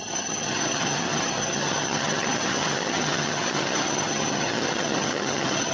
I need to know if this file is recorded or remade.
remade